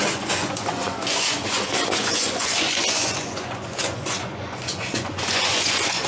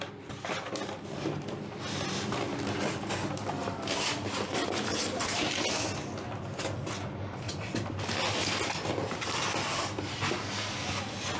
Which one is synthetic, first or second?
first